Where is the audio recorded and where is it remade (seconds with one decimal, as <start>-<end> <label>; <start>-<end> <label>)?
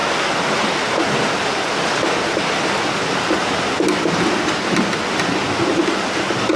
0.0-6.6 recorded